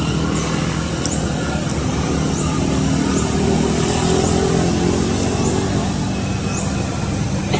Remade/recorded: recorded